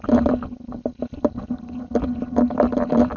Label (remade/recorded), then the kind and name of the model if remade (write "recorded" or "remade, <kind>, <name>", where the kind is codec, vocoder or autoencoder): recorded